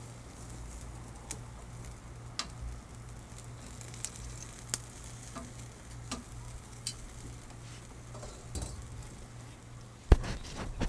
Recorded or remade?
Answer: recorded